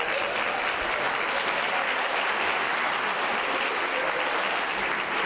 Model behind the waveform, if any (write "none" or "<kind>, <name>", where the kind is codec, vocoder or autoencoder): none